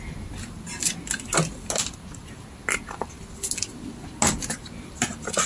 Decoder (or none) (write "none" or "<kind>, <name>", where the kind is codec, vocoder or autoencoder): none